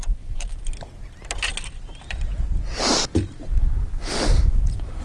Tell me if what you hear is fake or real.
real